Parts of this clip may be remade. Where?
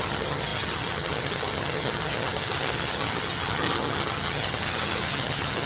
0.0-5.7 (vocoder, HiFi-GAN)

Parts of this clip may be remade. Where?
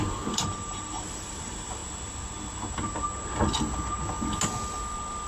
0.0-1.8 (vocoder, BigVGAN v2)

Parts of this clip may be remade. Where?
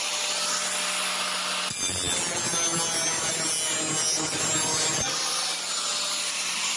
none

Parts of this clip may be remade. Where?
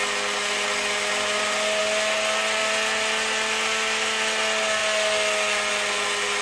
none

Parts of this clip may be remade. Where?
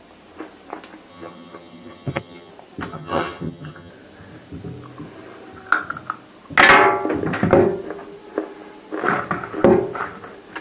1.1-2.5 (vocoder, HiFi-GAN); 2.9-3.9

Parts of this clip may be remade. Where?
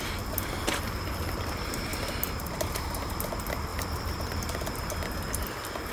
0.0-1.9 (vocoder, BigVGAN v2); 2.7-5.9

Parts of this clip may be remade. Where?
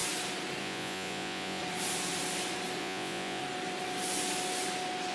0.6-1.6 (vocoder, Vocos); 2.8-3.4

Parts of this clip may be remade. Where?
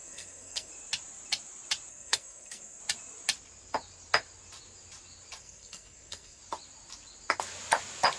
0.0-0.7 (codec, SNAC); 1.9-2.8; 5.4-6.4